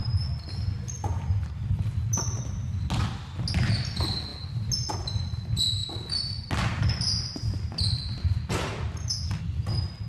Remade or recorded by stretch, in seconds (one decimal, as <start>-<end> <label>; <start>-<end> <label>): 0.0-10.1 recorded